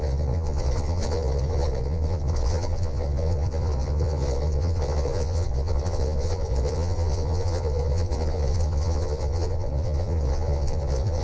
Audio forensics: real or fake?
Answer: fake